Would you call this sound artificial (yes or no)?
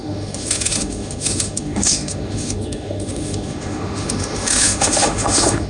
yes